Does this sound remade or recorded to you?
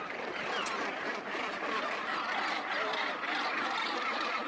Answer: recorded